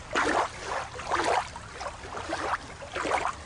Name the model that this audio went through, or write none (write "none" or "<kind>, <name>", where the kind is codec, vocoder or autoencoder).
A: none